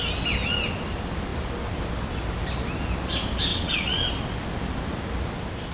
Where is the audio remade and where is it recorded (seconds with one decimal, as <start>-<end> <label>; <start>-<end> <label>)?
0.0-3.5 recorded; 3.5-4.1 remade; 4.1-5.7 recorded